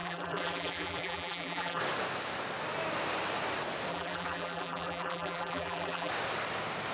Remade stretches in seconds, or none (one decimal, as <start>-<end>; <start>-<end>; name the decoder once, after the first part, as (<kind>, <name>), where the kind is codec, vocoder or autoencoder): 0.0-1.8 (vocoder, BigVGAN v2); 3.9-6.1